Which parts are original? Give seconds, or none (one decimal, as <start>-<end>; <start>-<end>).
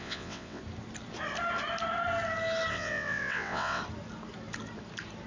0.6-2.7; 3.8-5.3